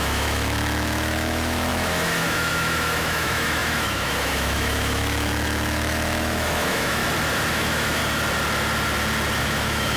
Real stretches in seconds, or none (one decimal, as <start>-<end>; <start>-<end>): 7.0-7.5; 8.0-9.4